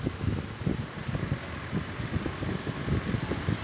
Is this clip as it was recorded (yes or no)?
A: yes